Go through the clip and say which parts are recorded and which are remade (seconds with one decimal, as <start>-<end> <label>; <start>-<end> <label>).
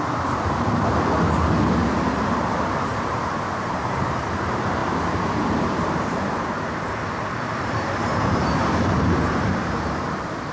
0.0-10.5 remade